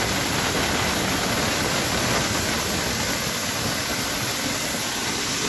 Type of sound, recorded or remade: recorded